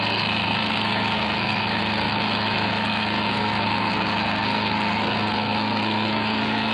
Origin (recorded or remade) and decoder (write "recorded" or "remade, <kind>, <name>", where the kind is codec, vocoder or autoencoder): remade, codec, SNAC